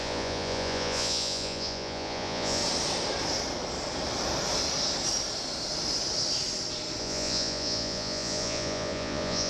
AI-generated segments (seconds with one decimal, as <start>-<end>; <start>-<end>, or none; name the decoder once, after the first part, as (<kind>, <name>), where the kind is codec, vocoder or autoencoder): 0.0-2.6 (vocoder, Vocos); 7.0-9.5